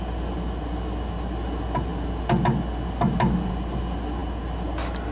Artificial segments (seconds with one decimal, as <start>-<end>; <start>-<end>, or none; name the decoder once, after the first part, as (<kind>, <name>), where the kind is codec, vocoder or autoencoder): none

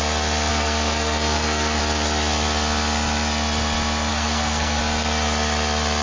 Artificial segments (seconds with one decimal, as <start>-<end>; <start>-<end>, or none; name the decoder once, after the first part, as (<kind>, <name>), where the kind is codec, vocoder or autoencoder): 0.5-1.8 (codec, SNAC); 4.1-4.8